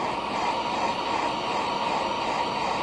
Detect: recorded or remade recorded